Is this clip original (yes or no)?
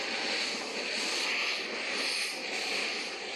yes